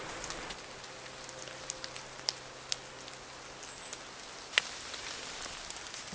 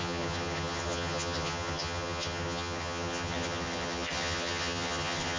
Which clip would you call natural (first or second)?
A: first